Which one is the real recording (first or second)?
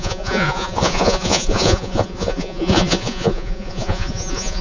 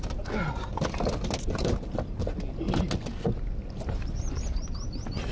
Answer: second